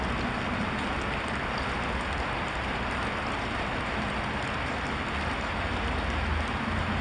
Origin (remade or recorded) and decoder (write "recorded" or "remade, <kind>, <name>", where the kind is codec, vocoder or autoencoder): recorded